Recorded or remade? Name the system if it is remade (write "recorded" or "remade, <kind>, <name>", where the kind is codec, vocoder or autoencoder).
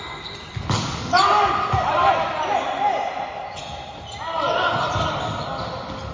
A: recorded